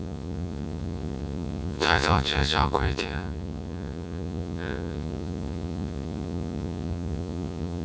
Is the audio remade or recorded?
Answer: remade